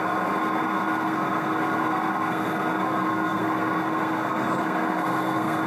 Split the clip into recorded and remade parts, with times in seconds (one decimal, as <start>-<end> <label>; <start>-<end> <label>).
0.0-5.7 remade